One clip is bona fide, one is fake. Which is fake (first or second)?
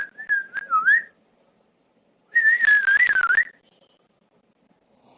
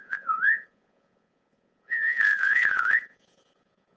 second